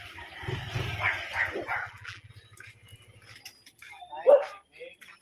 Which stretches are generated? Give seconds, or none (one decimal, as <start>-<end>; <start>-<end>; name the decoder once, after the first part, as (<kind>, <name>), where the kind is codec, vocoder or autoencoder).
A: 1.8-2.3 (vocoder, BigVGAN v2)